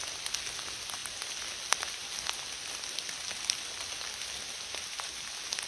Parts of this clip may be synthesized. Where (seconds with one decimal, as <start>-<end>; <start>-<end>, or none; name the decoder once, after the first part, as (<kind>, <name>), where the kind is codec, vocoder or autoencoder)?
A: none